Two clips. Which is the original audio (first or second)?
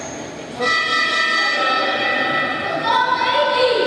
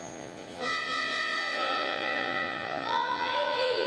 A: first